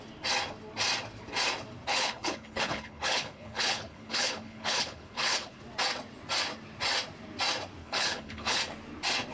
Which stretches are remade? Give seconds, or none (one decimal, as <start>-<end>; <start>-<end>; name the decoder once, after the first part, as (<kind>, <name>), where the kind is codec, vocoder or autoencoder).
1.9-5.6 (codec, HILCodec); 7.8-8.6